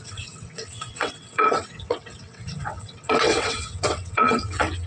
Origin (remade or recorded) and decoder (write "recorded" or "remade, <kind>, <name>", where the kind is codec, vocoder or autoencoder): remade, vocoder, WaveNeXt